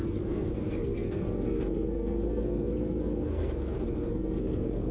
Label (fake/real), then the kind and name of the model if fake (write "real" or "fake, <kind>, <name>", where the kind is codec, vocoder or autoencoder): fake, codec, SNAC